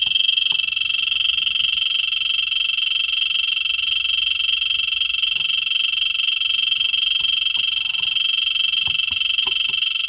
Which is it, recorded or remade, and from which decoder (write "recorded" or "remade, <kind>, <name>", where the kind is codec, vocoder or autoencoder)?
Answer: recorded